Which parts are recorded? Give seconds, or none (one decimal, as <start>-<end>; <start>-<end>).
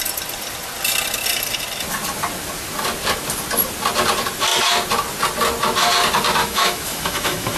0.0-6.4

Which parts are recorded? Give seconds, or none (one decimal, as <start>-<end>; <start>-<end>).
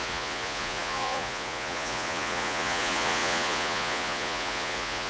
none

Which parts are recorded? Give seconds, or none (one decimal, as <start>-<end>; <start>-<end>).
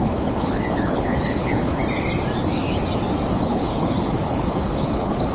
1.8-3.3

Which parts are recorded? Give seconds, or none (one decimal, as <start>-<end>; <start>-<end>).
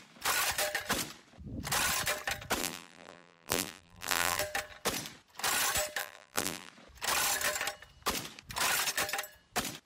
0.0-2.6; 4.4-6.0; 6.7-9.9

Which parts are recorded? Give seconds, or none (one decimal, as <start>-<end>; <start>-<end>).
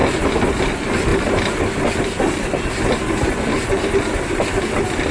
0.0-5.1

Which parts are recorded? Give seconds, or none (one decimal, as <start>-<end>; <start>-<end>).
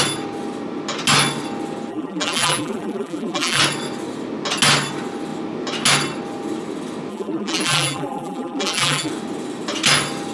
0.0-1.9; 3.6-7.1; 9.1-10.3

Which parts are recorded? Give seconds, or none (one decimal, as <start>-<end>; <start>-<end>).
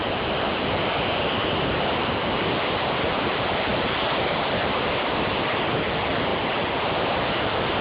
0.0-7.8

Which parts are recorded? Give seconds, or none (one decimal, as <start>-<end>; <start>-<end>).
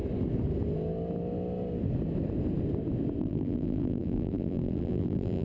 0.0-3.2